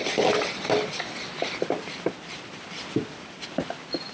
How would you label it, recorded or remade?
recorded